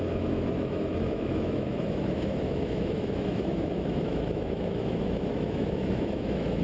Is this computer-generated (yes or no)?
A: yes